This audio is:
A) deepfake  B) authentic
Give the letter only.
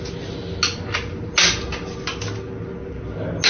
B